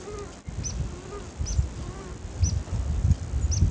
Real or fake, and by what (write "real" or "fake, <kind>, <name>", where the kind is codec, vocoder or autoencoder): real